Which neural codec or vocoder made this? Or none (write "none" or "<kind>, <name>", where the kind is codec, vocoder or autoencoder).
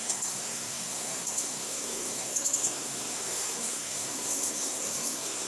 codec, SNAC